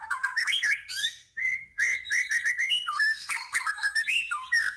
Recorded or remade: remade